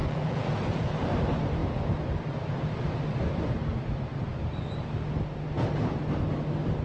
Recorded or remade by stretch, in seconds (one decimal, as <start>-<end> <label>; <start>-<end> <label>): 0.0-1.1 remade; 1.1-6.8 recorded